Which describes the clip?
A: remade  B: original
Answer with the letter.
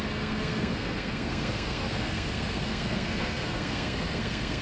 A